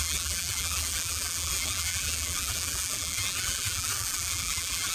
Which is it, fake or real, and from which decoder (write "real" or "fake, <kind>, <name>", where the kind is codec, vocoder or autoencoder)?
fake, vocoder, BigVGAN v2